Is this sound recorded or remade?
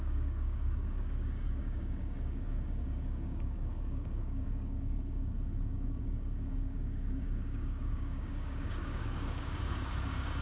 remade